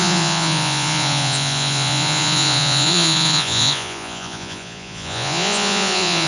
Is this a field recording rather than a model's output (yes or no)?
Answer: no